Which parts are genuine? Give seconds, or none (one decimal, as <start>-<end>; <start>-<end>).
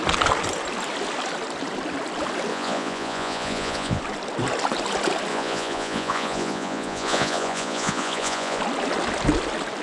0.0-2.5; 4.0-5.3; 8.6-9.8